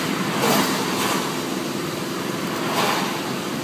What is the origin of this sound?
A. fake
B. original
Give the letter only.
B